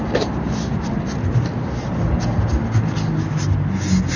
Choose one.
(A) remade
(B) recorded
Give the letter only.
B